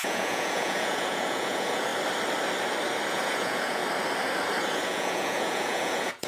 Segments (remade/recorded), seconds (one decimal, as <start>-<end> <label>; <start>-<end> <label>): 0.0-1.9 remade; 1.9-3.1 recorded; 3.1-3.8 remade; 3.8-4.7 recorded; 4.7-6.3 remade